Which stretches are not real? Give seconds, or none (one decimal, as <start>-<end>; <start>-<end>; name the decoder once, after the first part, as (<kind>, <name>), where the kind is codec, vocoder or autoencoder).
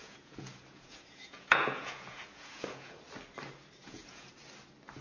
0.0-3.0 (vocoder, Vocos); 3.8-4.3